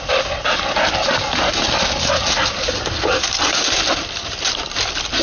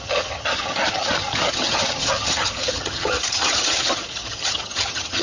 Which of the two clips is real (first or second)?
first